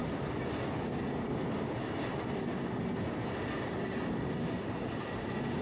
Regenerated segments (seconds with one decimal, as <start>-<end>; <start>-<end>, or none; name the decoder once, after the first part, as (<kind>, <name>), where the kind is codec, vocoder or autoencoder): none